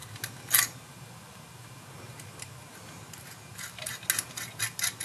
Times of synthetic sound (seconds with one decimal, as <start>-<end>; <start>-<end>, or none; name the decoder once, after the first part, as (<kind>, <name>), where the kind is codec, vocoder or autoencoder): none